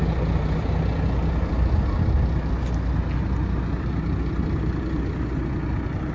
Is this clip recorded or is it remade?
recorded